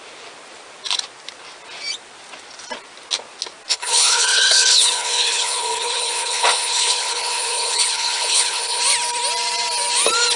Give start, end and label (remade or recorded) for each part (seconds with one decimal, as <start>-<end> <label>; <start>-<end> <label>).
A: 0.0-3.7 recorded; 3.7-8.8 remade; 8.8-10.4 recorded